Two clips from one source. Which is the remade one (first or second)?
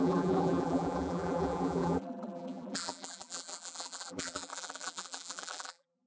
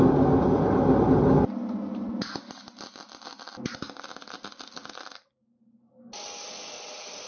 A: first